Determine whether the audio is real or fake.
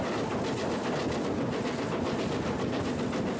real